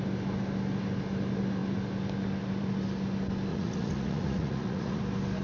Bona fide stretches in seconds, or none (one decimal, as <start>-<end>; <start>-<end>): 0.0-3.5; 5.0-5.4